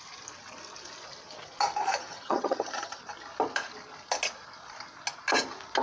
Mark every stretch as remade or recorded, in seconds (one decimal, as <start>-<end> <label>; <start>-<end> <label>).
0.0-2.0 recorded; 2.0-3.0 remade; 3.0-5.8 recorded